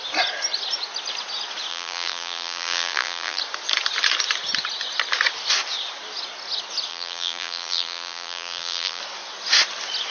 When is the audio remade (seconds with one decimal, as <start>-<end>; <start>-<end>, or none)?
1.7-3.4; 6.9-9.0